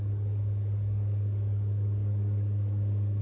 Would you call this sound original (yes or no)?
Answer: no